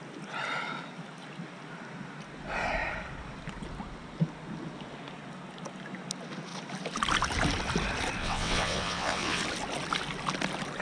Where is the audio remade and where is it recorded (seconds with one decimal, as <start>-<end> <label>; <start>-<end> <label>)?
0.0-8.2 recorded; 8.2-9.4 remade; 9.4-10.8 recorded